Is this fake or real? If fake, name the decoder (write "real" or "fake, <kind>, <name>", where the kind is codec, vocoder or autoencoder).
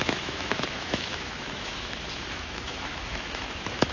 fake, autoencoder, DAC-VAE